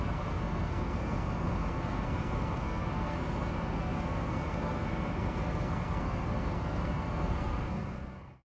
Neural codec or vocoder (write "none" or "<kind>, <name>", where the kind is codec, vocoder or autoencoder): codec, SNAC